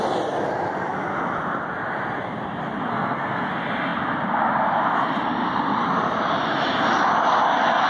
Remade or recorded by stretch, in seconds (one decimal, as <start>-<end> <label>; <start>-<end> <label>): 0.0-2.9 recorded; 2.9-3.5 remade; 3.5-7.9 recorded

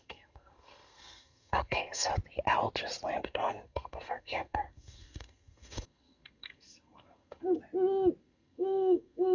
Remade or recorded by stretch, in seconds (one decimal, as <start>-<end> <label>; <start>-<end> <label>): 0.0-2.1 remade; 2.1-3.2 recorded; 3.2-7.6 remade; 7.6-8.2 recorded; 8.2-9.3 remade

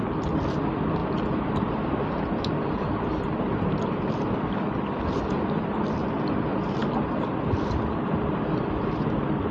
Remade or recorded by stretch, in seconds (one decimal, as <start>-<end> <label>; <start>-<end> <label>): 0.0-9.5 recorded

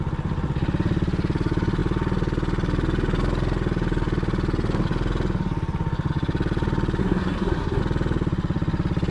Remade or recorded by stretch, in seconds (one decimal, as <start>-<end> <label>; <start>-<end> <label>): 0.0-7.0 recorded; 7.0-7.8 remade; 7.8-9.1 recorded

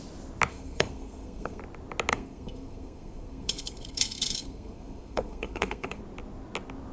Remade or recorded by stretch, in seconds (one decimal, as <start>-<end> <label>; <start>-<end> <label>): 0.0-0.5 recorded; 0.5-1.6 remade; 1.6-2.1 recorded; 2.1-6.0 remade; 6.0-6.9 recorded

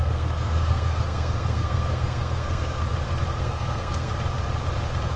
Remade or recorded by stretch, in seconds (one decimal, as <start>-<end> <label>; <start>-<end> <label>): 0.0-2.8 remade; 2.8-3.4 recorded; 3.4-4.1 remade; 4.1-5.2 recorded